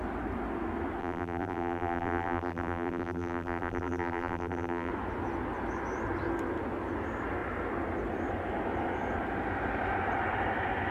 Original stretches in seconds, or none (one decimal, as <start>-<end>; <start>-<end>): 0.0-1.0; 4.9-10.9